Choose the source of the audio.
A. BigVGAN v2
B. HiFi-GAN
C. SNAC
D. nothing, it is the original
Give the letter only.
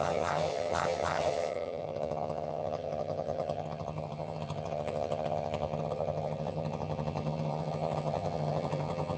B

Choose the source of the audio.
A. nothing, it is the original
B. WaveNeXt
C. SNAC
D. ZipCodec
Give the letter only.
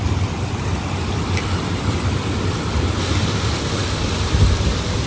A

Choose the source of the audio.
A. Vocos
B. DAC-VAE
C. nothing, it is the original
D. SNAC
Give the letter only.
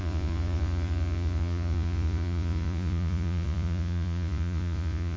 A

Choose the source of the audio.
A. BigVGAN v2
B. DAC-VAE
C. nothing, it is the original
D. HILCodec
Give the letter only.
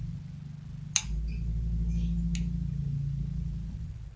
C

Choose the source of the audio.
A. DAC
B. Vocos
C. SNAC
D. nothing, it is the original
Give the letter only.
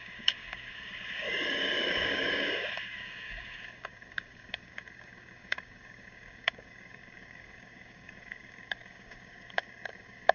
A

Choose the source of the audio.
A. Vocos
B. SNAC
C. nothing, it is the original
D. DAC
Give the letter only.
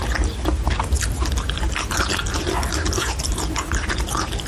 C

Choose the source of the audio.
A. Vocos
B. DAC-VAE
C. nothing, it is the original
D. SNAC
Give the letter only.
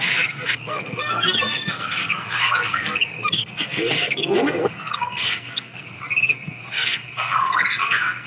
D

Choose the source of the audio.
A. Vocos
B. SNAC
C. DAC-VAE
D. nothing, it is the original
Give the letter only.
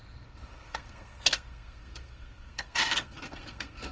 B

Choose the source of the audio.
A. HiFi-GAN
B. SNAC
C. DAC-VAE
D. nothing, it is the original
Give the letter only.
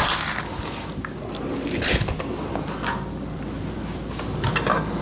D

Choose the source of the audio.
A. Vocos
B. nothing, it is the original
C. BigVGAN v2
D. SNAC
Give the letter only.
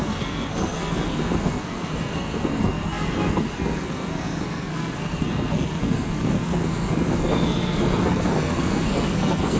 D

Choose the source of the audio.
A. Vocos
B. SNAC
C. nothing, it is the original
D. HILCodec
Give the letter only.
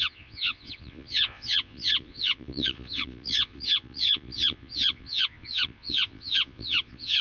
A